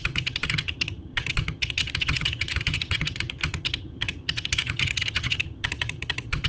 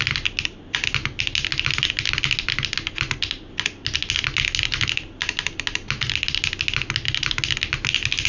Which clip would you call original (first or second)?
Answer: second